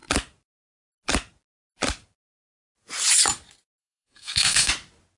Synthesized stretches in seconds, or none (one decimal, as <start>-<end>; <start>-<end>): 3.8-4.7